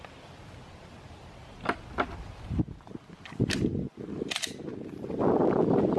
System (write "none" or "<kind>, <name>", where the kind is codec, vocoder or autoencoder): none